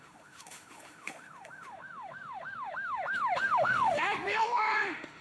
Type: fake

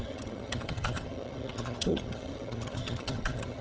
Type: fake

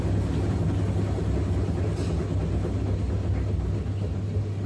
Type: real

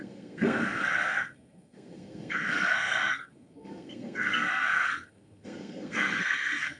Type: fake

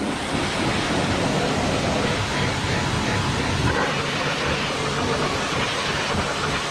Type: real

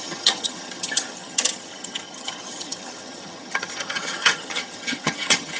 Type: fake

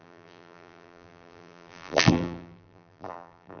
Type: fake